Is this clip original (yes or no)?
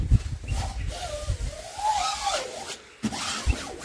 yes